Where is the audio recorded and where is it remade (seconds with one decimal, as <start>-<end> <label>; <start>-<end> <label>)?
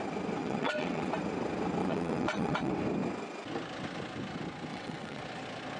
0.0-0.4 recorded; 0.4-1.1 remade; 1.1-1.8 recorded; 1.8-2.7 remade; 2.7-4.7 recorded; 4.7-5.2 remade; 5.2-5.8 recorded